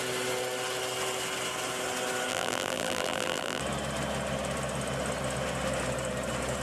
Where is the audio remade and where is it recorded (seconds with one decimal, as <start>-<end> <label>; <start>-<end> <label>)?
0.0-2.3 recorded; 2.3-3.6 remade; 3.6-6.6 recorded